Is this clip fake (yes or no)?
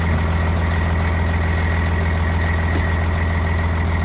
no